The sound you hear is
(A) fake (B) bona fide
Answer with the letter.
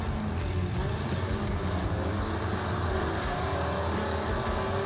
B